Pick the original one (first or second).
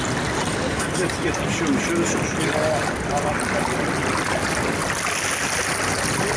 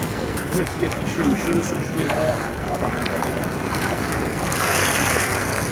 first